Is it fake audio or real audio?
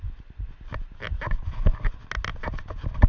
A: real